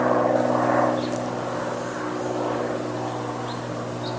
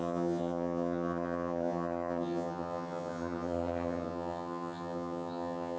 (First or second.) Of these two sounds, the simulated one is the second